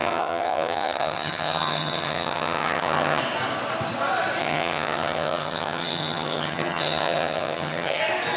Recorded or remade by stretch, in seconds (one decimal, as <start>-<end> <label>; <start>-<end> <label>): 0.0-3.2 remade; 3.2-4.4 recorded; 4.4-8.0 remade; 8.0-8.4 recorded